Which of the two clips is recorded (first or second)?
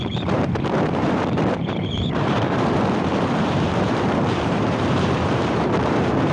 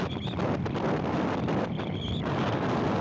second